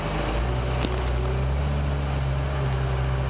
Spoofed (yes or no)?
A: no